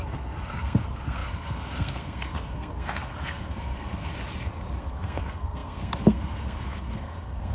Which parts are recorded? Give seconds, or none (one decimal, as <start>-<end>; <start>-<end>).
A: 4.1-4.8